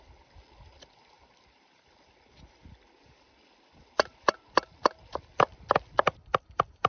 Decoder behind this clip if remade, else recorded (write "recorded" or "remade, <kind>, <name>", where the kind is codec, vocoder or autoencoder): recorded